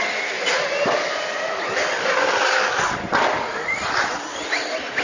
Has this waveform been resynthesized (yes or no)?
no